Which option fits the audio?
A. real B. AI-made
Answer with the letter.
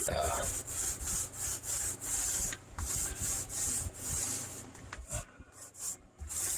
B